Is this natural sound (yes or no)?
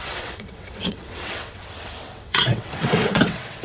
no